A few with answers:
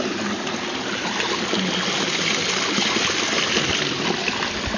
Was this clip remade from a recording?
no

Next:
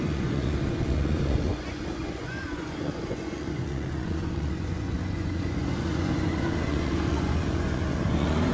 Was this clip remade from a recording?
yes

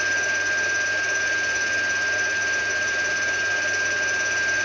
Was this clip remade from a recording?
no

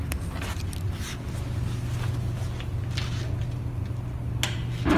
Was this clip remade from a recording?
no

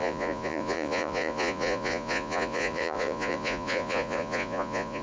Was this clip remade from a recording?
yes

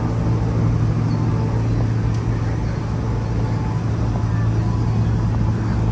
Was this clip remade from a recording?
no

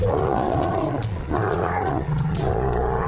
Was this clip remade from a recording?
yes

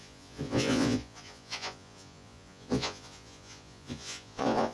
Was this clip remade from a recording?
yes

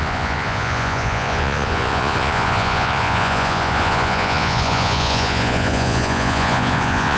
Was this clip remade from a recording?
yes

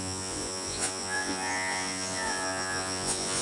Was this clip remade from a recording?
yes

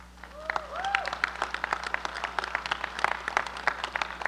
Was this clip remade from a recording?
no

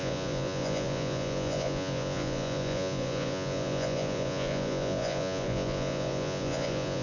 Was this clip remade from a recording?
yes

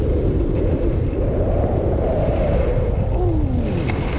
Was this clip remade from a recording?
no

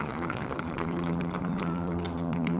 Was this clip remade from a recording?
yes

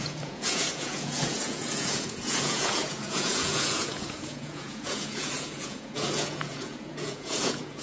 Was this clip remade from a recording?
yes